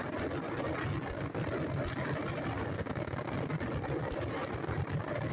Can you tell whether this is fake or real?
real